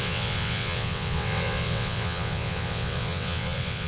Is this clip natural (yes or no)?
no